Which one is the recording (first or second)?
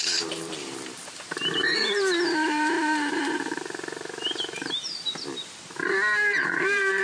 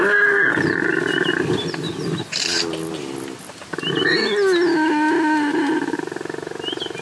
second